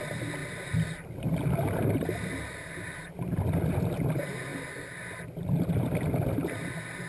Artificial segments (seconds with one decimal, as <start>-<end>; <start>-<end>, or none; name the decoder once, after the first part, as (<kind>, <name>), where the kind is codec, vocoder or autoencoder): none